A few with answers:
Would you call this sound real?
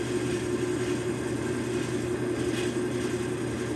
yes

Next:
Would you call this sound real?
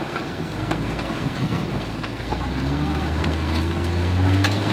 no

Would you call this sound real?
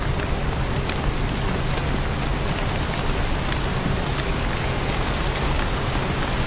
yes